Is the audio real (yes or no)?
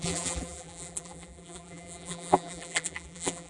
no